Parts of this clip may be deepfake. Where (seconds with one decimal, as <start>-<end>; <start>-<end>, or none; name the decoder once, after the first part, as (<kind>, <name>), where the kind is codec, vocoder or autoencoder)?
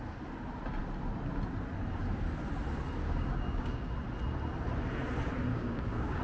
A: 3.0-3.9 (codec, DAC); 5.5-6.2